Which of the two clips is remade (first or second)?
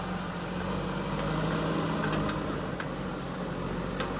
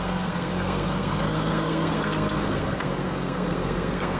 second